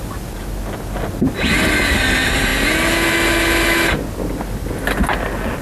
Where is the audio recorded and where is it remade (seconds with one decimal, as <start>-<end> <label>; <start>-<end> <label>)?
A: 0.0-5.6 recorded

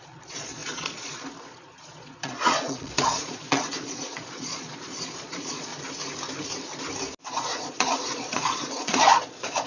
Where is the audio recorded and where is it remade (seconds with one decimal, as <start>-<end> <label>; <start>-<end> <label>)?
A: 0.0-5.7 remade; 5.7-7.3 recorded; 7.3-9.7 remade

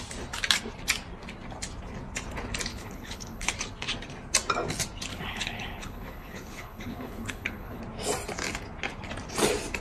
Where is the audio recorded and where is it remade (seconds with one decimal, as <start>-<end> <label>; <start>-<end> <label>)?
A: 0.0-2.7 recorded; 2.7-3.5 remade; 3.5-5.1 recorded; 5.1-7.8 remade; 7.8-9.8 recorded